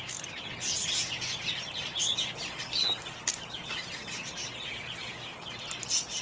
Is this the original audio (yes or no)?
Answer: yes